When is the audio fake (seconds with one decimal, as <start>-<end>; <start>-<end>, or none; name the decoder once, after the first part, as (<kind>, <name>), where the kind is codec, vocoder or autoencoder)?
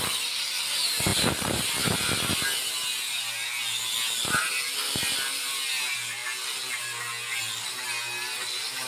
none